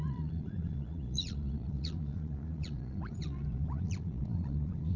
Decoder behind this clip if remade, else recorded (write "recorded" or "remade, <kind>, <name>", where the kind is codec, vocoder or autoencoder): remade, vocoder, Vocos